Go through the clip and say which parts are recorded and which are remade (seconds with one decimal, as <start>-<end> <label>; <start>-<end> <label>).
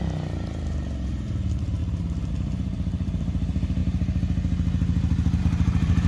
0.0-3.8 remade; 3.8-5.4 recorded; 5.4-6.1 remade